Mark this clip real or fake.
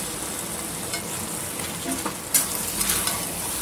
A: real